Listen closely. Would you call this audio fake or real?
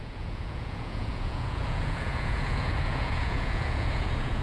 fake